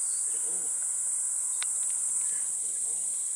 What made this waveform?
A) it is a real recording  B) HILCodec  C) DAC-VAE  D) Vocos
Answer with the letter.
A